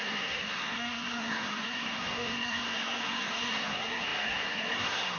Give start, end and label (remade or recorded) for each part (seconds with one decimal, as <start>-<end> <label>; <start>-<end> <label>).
0.0-5.2 remade